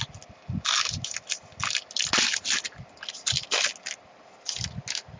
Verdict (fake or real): real